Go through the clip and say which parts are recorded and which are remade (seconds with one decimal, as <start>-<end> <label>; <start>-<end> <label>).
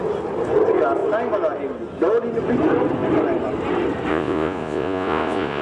0.0-4.1 recorded; 4.1-5.6 remade